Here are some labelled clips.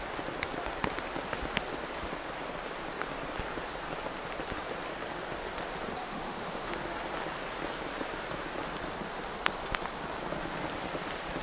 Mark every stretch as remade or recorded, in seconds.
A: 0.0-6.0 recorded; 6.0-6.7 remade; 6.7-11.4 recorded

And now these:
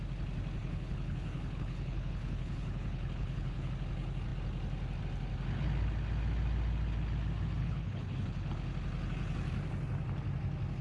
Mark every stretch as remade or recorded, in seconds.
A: 0.0-0.6 recorded; 0.6-3.7 remade; 3.7-7.6 recorded; 7.6-8.5 remade; 8.5-10.8 recorded

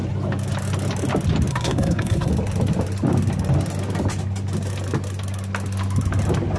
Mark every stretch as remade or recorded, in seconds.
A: 0.0-1.5 recorded; 1.5-2.3 remade; 2.3-6.6 recorded

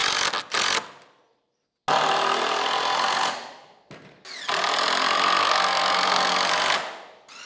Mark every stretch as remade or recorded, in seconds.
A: 0.0-5.4 recorded; 5.4-6.3 remade; 6.3-7.5 recorded

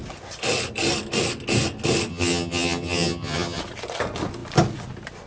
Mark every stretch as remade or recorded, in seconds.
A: 0.0-2.1 recorded; 2.1-3.6 remade; 3.6-5.3 recorded

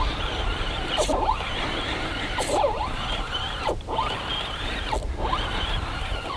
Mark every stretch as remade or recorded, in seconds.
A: 0.0-0.5 recorded; 0.5-4.3 remade; 4.3-6.4 recorded

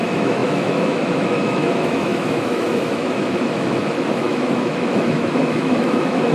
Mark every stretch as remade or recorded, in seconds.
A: 0.0-6.3 remade